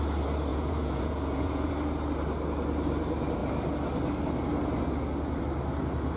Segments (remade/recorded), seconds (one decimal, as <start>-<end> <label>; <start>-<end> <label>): 0.0-0.5 recorded; 0.5-1.7 remade; 1.7-6.2 recorded